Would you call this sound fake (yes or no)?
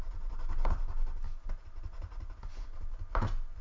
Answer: no